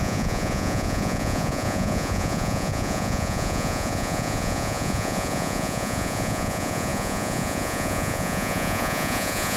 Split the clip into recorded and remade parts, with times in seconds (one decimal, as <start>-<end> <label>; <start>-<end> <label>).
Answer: 0.0-9.6 remade